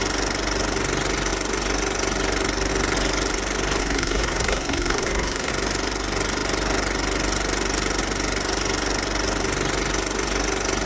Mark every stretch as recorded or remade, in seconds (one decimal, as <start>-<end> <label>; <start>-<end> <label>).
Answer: 0.0-3.8 recorded; 3.8-5.5 remade; 5.5-10.9 recorded